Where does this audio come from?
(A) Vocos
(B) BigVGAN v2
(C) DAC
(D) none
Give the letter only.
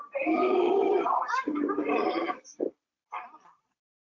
B